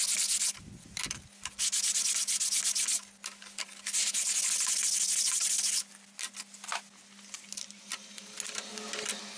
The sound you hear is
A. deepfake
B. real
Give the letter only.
B